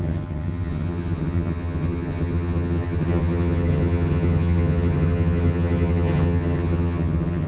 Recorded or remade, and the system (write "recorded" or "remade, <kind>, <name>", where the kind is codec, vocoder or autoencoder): remade, vocoder, HiFi-GAN